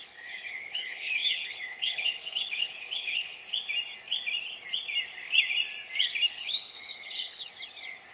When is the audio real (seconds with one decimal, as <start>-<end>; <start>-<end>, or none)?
3.4-6.3; 7.5-8.1